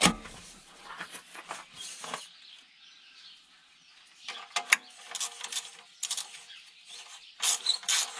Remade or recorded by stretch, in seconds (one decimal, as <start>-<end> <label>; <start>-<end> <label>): 0.0-0.6 recorded; 0.6-1.4 remade; 1.4-8.2 recorded